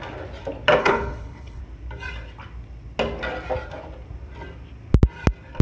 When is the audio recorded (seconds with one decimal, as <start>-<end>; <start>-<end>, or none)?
0.0-0.8; 1.6-5.6